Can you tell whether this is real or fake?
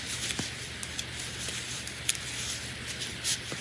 real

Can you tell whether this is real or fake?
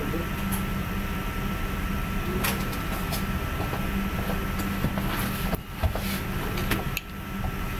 real